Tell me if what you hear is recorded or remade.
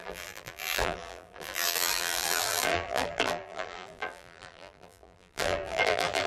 remade